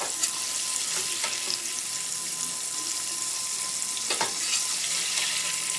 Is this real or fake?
real